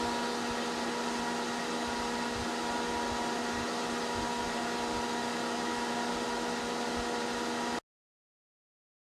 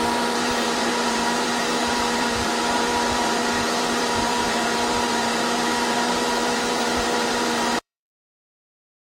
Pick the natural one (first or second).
first